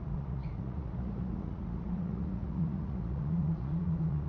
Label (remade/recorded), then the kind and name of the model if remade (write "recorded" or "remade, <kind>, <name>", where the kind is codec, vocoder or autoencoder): remade, vocoder, Vocos